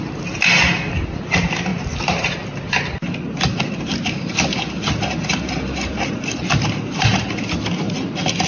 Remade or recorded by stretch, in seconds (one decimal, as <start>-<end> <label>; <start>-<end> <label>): 0.0-8.5 recorded